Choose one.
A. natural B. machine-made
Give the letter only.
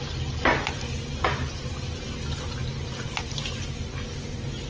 A